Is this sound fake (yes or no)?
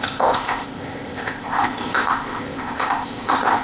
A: yes